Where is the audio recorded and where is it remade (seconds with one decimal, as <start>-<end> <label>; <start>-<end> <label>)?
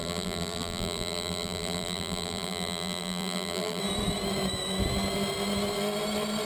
0.0-3.8 remade; 3.8-6.4 recorded